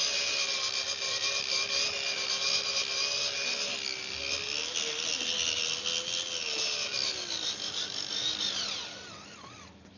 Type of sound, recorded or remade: recorded